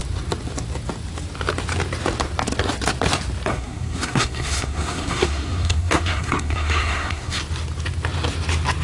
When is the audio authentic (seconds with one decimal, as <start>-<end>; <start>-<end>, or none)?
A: 0.0-3.5; 7.4-8.8